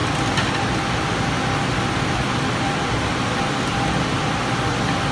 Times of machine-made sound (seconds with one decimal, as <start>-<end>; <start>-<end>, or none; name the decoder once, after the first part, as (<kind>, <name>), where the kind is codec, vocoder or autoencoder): none